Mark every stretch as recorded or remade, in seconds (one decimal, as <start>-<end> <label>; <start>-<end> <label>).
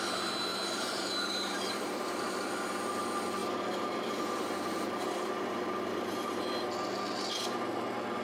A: 0.0-0.5 recorded; 0.5-2.5 remade; 2.5-3.4 recorded; 3.4-6.4 remade; 6.4-8.2 recorded